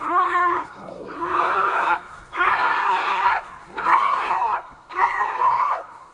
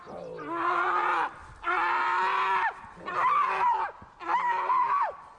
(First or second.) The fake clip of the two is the first